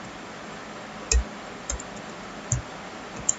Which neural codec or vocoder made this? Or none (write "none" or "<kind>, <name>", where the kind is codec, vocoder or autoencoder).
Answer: none